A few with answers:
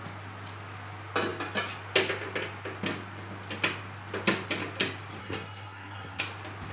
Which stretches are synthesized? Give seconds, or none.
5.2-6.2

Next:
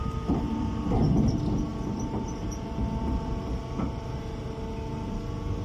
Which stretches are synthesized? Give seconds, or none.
none

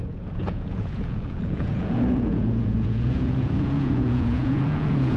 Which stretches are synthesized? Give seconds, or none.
0.0-5.2

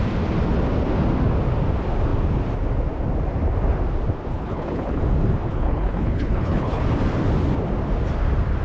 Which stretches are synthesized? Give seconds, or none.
4.3-5.0; 5.5-6.8

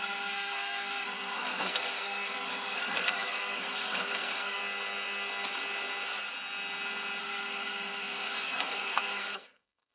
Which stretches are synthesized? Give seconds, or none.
0.0-4.6; 7.2-9.9

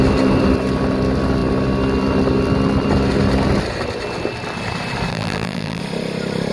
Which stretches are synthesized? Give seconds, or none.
5.1-5.8

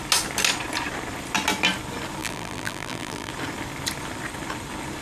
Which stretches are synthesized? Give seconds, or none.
2.2-3.3